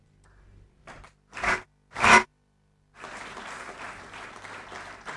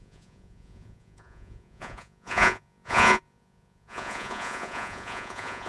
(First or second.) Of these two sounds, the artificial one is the second